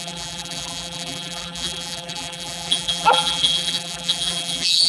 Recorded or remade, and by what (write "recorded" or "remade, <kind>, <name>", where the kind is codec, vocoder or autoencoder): remade, vocoder, BigVGAN v2